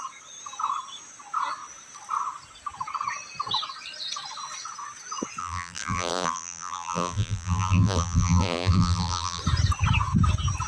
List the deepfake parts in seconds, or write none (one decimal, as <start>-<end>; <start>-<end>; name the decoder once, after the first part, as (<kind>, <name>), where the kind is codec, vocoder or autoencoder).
5.4-9.4 (vocoder, BigVGAN v2)